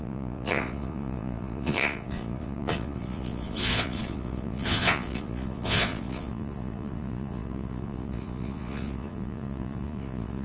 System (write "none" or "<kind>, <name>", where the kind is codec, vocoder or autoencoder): vocoder, Vocos